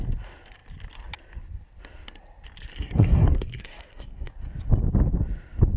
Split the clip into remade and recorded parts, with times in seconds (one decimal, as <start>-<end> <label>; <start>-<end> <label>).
0.0-2.7 recorded; 2.7-4.3 remade; 4.3-5.8 recorded